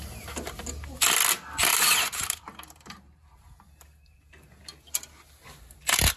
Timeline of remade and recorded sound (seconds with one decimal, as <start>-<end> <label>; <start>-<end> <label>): 0.0-1.7 recorded; 1.7-3.4 remade; 3.4-6.2 recorded